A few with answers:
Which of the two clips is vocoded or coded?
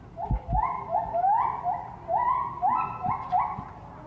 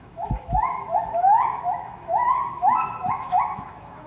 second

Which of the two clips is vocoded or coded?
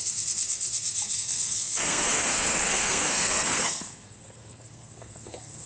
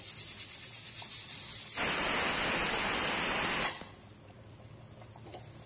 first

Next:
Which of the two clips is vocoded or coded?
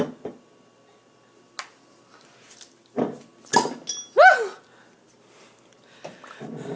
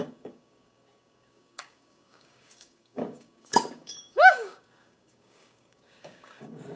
second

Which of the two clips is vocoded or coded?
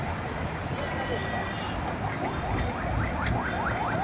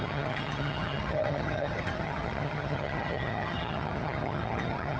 second